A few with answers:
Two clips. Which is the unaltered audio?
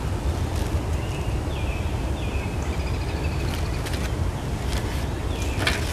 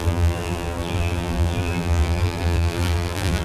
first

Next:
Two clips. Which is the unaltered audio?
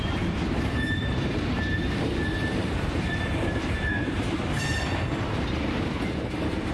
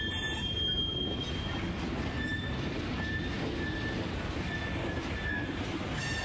second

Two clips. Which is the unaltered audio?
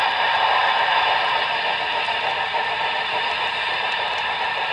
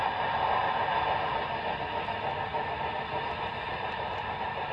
second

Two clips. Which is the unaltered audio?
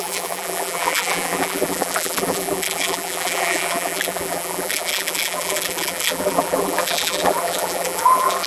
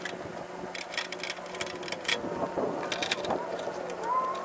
second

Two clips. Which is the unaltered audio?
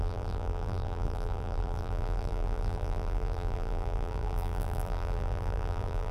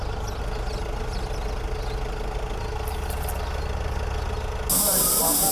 second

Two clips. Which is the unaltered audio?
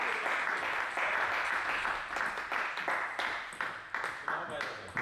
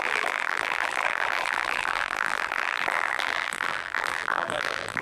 first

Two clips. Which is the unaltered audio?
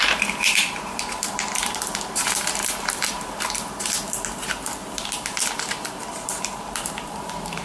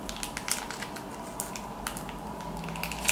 second